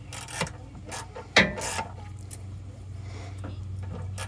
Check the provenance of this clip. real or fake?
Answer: real